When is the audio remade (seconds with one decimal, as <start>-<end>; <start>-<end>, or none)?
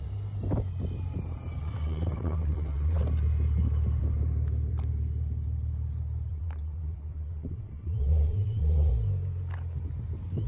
1.6-3.0; 6.3-8.9